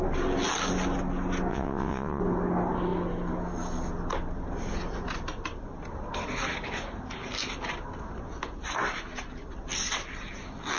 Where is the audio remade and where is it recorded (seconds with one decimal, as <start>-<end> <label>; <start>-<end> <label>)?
0.0-1.5 recorded; 1.5-2.2 remade; 2.2-10.8 recorded